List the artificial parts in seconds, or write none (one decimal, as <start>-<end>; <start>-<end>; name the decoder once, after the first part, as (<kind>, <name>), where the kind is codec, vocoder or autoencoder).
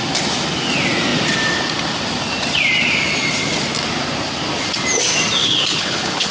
5.4-6.3 (codec, HILCodec)